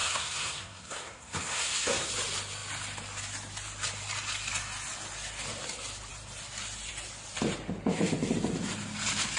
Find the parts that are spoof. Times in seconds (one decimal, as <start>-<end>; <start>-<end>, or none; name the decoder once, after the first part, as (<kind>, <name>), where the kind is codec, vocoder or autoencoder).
0.0-2.1 (codec, SNAC)